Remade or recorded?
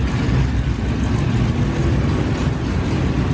recorded